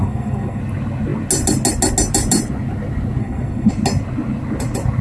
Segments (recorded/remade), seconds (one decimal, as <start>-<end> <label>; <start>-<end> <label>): 0.0-0.6 remade; 0.6-3.2 recorded; 3.2-3.7 remade; 3.7-5.0 recorded